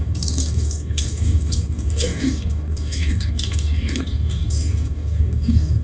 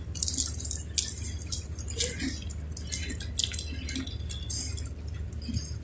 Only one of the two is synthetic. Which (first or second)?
first